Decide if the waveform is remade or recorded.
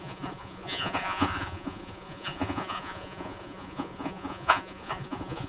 remade